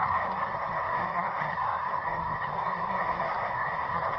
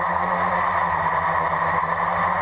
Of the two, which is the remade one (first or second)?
first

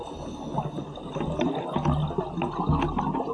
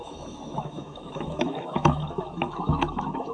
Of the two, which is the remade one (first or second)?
second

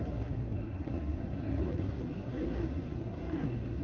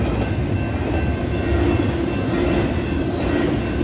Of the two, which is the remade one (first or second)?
first